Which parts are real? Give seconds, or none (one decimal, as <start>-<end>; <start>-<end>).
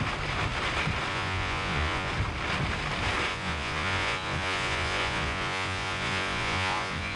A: 0.0-1.1; 2.1-3.3